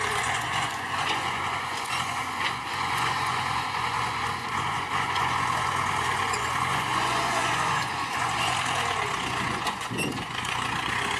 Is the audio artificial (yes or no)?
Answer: yes